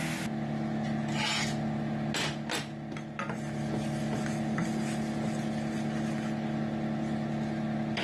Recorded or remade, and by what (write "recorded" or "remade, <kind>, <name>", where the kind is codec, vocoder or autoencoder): recorded